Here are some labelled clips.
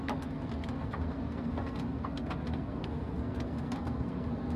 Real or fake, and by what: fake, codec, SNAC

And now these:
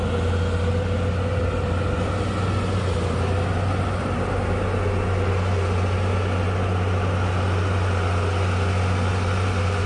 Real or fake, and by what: real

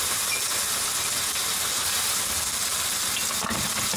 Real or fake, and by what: real